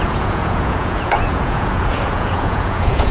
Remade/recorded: remade